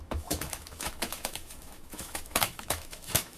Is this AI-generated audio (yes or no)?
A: yes